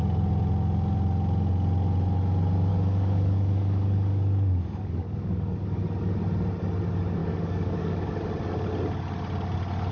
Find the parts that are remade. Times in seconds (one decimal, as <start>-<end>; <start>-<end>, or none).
2.7-5.8; 7.2-8.1